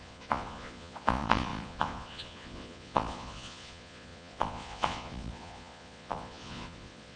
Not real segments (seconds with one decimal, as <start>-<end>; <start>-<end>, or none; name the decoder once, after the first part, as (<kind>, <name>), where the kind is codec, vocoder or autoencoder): 0.0-7.2 (vocoder, Vocos)